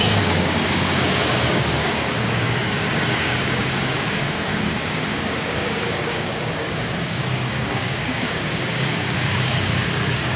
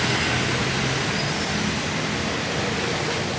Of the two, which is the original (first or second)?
second